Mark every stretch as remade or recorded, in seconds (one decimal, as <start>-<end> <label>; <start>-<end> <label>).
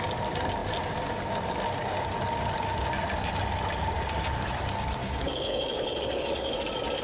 0.0-5.0 recorded; 5.0-5.6 remade; 5.6-7.0 recorded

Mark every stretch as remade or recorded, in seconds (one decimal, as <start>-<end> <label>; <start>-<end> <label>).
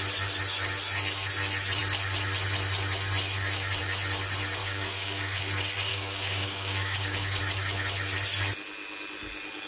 0.0-4.6 recorded; 4.6-5.4 remade; 5.4-5.9 recorded; 5.9-7.4 remade; 7.4-9.7 recorded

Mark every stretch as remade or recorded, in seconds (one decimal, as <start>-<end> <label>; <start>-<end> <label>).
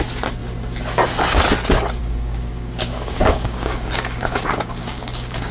0.0-2.0 recorded; 2.0-5.5 remade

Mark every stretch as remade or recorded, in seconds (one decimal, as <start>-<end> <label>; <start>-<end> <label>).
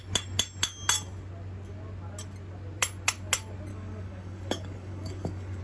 0.0-3.7 recorded; 3.7-5.6 remade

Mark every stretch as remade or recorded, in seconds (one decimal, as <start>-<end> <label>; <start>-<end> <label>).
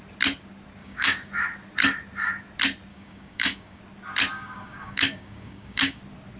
0.0-0.8 recorded; 0.8-1.3 remade; 1.3-2.9 recorded; 2.9-3.8 remade; 3.8-4.3 recorded; 4.3-6.0 remade; 6.0-6.4 recorded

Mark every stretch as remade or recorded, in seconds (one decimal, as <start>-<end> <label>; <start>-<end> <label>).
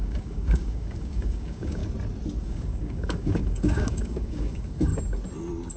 0.0-1.8 remade; 1.8-2.4 recorded; 2.4-4.9 remade; 4.9-5.8 recorded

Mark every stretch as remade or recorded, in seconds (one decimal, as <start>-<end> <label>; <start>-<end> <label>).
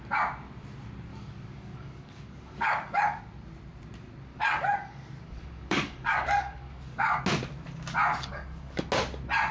0.0-1.1 recorded; 1.1-3.2 remade; 3.2-4.3 recorded; 4.3-7.2 remade; 7.2-8.1 recorded; 8.1-8.8 remade; 8.8-9.5 recorded